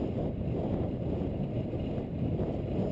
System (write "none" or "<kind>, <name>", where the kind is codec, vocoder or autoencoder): none